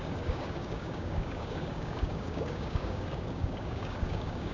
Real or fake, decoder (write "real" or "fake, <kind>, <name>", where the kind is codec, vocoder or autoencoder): fake, codec, DAC